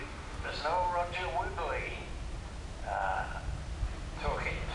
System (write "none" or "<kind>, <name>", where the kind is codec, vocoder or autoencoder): none